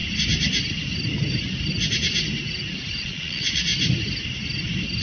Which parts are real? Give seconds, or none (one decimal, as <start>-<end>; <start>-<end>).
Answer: 0.0-3.0; 3.7-5.0